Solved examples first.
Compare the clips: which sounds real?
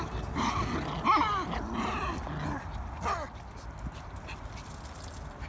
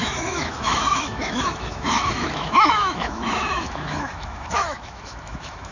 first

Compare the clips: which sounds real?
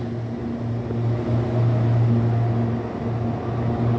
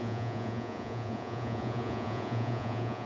first